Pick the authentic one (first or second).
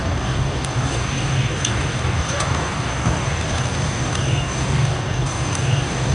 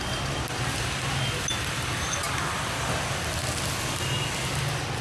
second